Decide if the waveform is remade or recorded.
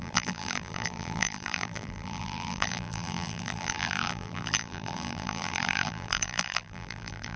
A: remade